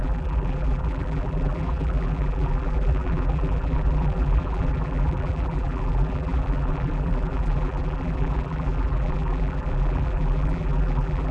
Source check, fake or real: fake